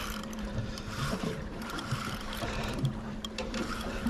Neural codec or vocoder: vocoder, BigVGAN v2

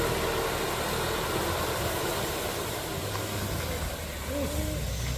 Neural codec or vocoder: none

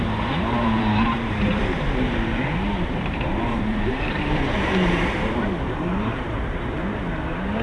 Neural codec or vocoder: vocoder, BigVGAN v2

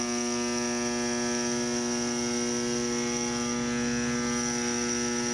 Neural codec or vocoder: none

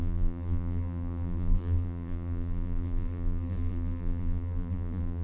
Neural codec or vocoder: vocoder, BigVGAN v2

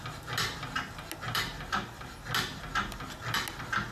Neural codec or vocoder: none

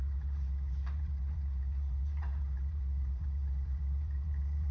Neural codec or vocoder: vocoder, BigVGAN v2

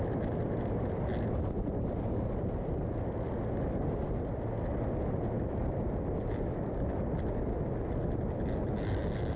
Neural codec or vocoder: none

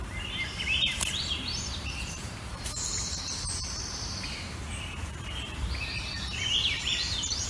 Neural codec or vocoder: vocoder, BigVGAN v2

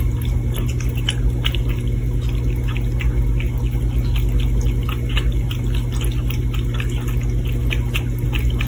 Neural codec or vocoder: none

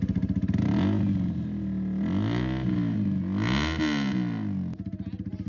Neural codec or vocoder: none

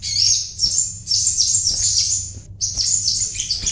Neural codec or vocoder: vocoder, BigVGAN v2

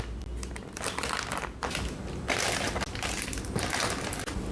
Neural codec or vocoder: none